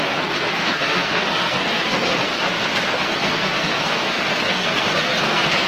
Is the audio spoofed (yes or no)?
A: yes